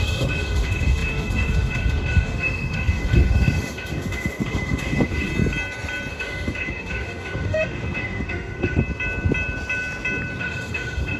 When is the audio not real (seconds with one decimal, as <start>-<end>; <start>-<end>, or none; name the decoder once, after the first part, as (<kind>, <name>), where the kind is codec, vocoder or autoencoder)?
0.0-5.3 (autoencoder, DAC-VAE); 6.1-8.8; 10.4-11.2